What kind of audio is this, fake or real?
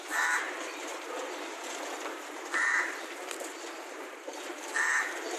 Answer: fake